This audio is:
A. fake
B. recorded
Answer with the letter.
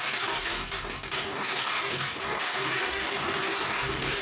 A